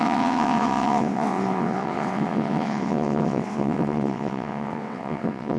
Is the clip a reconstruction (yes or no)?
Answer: yes